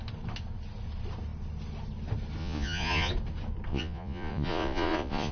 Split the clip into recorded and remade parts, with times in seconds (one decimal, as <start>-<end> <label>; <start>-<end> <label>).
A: 0.0-2.4 recorded; 2.4-3.1 remade; 3.1-3.7 recorded; 3.7-5.3 remade